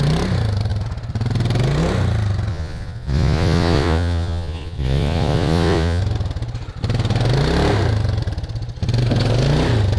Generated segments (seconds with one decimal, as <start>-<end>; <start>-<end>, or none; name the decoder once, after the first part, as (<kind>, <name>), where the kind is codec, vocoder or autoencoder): 2.5-6.0 (vocoder, Vocos)